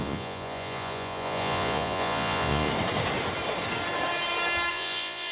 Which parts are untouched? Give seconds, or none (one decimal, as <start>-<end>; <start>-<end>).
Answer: 2.7-4.7